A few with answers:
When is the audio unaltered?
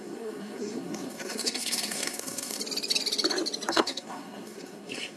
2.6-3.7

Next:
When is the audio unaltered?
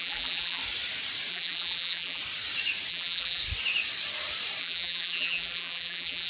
0.6-1.3; 2.2-2.9; 3.4-4.6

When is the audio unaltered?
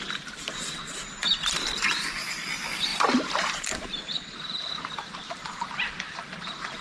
none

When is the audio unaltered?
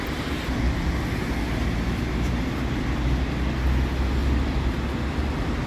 0.0-5.7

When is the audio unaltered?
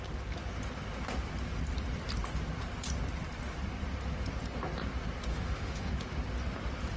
0.0-5.3; 5.9-7.0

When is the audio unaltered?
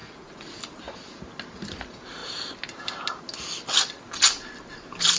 0.6-5.2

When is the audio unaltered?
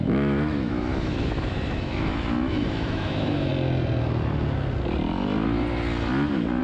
3.5-6.6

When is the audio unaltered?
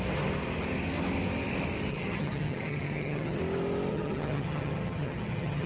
0.0-1.9; 3.4-3.9